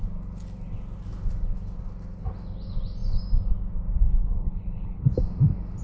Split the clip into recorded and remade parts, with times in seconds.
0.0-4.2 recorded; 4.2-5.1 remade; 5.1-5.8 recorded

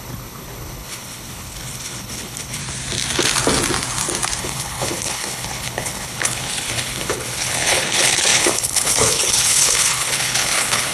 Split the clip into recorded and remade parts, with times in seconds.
0.0-2.6 remade; 2.6-4.4 recorded; 4.4-10.9 remade

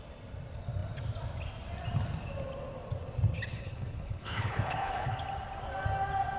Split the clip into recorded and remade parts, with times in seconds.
0.0-3.5 recorded; 3.5-5.1 remade; 5.1-6.4 recorded

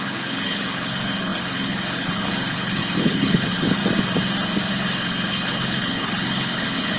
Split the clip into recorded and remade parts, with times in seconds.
0.0-3.8 remade; 3.8-4.7 recorded; 4.7-7.0 remade

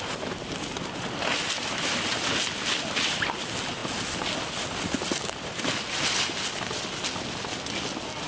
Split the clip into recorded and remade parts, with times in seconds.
0.0-8.3 recorded

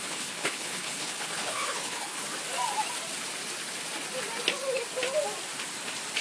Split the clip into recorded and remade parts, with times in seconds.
0.0-2.2 remade; 2.2-6.2 recorded

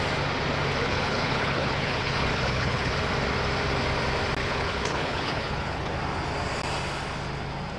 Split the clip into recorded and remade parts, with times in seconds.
0.0-0.8 recorded; 0.8-2.9 remade; 2.9-4.4 recorded; 4.4-5.9 remade; 5.9-7.8 recorded